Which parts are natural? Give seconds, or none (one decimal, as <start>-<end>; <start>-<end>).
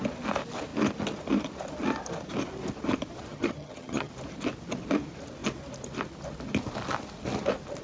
0.0-3.3; 4.1-7.8